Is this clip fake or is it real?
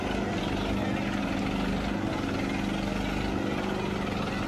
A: real